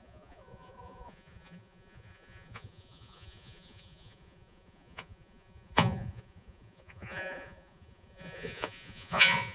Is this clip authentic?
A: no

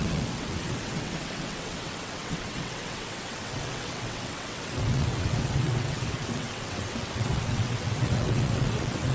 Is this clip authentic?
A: no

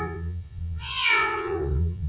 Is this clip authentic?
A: no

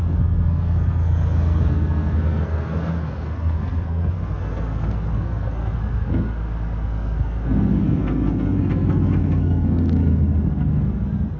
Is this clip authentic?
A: no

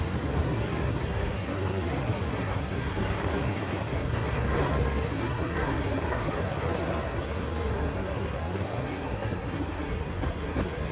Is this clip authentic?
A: no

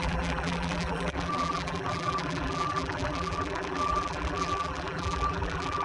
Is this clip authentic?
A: no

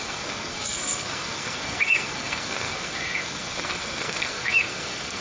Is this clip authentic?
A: no